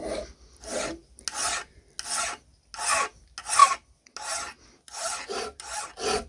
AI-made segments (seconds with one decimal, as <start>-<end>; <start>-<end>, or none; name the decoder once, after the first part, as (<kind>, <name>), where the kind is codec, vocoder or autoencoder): none